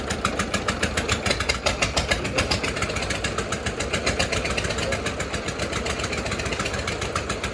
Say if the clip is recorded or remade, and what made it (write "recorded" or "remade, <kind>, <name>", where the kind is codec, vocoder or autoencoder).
recorded